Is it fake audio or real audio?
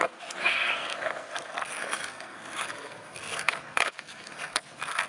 fake